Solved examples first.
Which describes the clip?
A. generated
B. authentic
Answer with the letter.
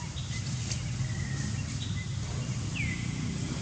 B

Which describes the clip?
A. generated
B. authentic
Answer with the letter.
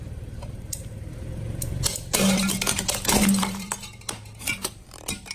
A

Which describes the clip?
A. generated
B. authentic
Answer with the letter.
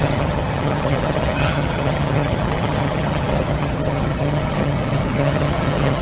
A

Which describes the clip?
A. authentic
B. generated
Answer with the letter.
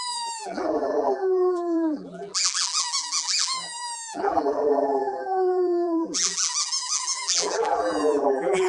B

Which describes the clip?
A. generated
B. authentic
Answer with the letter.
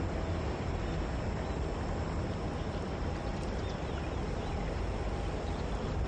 B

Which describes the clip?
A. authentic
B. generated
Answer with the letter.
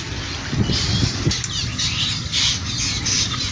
A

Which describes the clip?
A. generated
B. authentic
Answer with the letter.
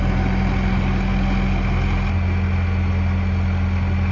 B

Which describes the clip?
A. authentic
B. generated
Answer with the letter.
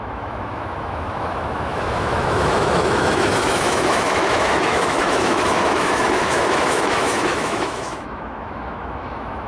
B